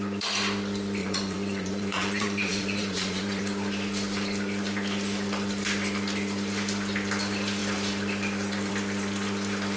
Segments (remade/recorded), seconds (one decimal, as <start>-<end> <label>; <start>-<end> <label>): 0.0-1.0 recorded; 1.0-3.4 remade; 3.4-9.8 recorded